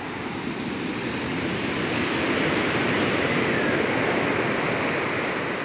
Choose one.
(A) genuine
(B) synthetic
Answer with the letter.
A